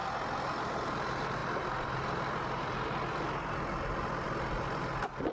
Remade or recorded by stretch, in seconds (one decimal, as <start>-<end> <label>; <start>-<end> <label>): 0.0-5.3 recorded